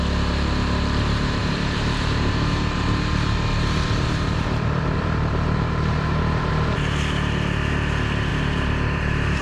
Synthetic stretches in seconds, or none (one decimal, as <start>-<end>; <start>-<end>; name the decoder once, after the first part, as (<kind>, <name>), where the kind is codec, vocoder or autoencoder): 1.4-6.5 (vocoder, BigVGAN v2); 8.3-9.4